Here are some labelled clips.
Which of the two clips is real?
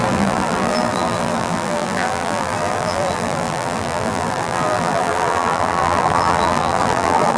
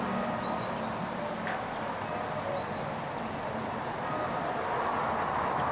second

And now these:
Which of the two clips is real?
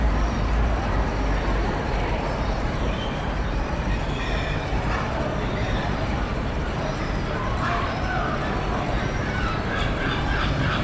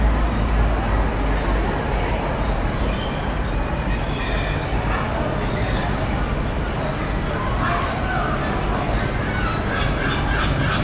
second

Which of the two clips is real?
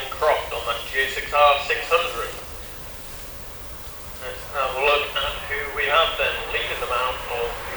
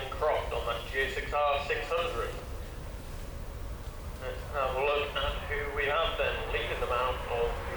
second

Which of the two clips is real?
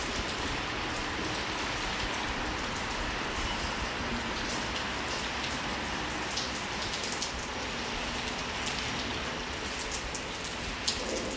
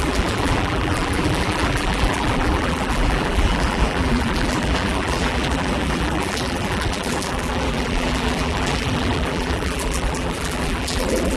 first